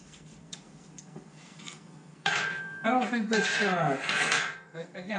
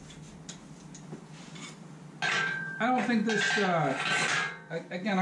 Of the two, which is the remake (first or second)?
first